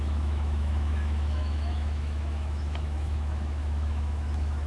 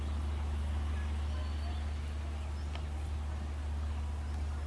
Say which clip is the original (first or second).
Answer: second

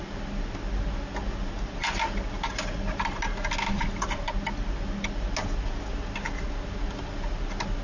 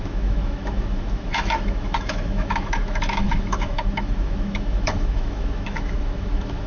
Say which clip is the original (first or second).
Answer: first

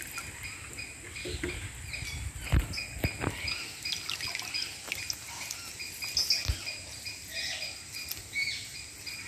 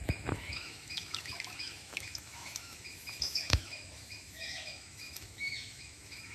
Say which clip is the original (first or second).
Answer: first